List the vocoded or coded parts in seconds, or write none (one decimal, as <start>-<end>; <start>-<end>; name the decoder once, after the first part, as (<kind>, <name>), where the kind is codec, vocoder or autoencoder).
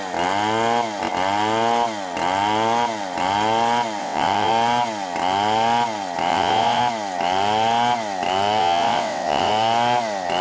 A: 4.0-4.5 (vocoder, WaveNeXt); 6.3-6.8; 8.6-9.5